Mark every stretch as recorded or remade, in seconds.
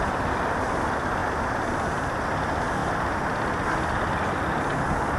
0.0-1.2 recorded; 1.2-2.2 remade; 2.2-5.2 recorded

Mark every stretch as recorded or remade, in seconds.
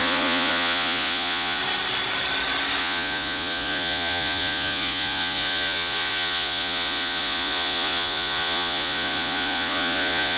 0.0-1.6 remade; 1.6-2.8 recorded; 2.8-10.4 remade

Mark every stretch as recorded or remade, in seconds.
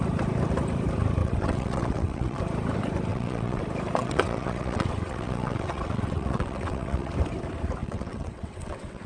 0.0-1.2 recorded; 1.2-2.4 remade; 2.4-3.1 recorded; 3.1-3.6 remade; 3.6-4.0 recorded; 4.0-7.1 remade; 7.1-7.8 recorded; 7.8-9.1 remade